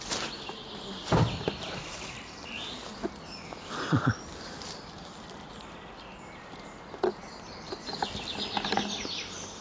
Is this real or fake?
real